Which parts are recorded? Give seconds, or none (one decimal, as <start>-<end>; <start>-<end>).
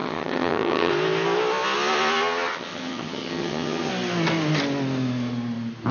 0.9-2.5; 3.9-5.9